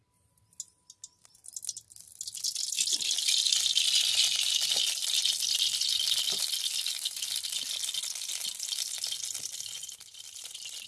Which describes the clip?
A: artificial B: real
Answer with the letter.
B